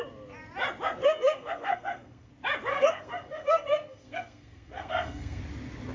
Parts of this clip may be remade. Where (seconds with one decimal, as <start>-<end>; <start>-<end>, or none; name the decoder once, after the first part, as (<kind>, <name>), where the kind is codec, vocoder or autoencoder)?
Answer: 1.0-2.3 (codec, SNAC); 2.7-5.4

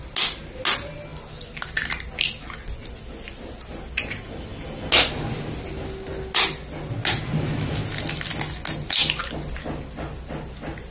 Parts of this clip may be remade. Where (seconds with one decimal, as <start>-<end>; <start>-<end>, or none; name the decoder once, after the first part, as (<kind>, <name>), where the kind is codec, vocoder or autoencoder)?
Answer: none

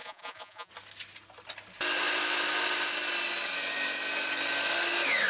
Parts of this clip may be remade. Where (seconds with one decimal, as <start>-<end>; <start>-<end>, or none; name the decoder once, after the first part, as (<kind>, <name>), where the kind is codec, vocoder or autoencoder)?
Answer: 0.0-0.7 (vocoder, Vocos)

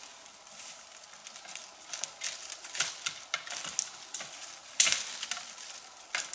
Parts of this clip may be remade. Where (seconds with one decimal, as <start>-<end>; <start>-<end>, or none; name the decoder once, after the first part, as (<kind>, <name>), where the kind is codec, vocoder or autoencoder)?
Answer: none

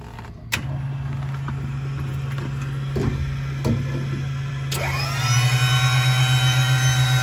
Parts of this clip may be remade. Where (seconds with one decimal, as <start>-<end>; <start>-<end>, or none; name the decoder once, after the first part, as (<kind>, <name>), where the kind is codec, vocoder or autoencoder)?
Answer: none

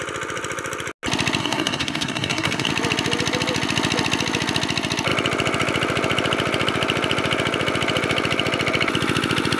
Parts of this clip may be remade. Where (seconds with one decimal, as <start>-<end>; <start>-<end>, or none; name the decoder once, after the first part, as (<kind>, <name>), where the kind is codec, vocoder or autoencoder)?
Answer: 1.4-2.7 (codec, SNAC)

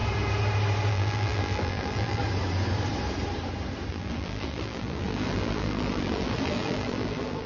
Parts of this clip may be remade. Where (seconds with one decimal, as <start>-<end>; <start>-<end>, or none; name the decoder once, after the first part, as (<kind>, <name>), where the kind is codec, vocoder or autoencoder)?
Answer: 0.9-2.2 (vocoder, BigVGAN v2); 3.9-7.5

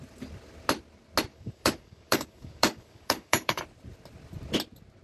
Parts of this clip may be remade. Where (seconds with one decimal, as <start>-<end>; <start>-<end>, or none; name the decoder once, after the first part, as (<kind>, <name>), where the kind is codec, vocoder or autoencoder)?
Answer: 1.3-3.6 (codec, DAC)